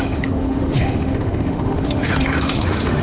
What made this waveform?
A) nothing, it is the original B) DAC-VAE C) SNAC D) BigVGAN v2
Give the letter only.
B